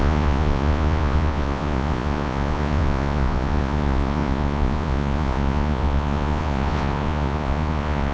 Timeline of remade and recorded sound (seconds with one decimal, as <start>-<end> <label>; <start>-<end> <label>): 0.0-8.1 remade

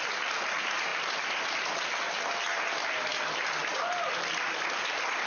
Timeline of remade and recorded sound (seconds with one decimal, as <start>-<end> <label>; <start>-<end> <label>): 0.0-5.3 recorded

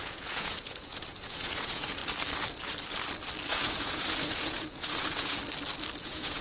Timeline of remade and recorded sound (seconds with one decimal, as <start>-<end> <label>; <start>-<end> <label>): 0.0-2.0 remade; 2.0-3.5 recorded; 3.5-5.4 remade; 5.4-6.0 recorded; 6.0-6.4 remade

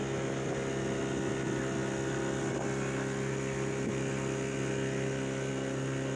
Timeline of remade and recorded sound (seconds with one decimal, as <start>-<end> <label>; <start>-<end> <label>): 0.0-6.2 recorded